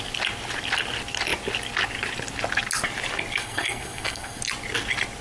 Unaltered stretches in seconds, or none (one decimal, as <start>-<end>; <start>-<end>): 0.0-3.4; 4.4-5.2